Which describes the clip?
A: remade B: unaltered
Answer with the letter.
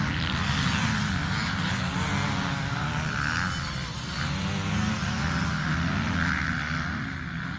B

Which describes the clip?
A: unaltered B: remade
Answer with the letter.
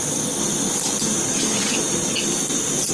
A